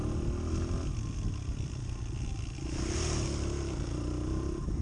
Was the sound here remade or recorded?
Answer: recorded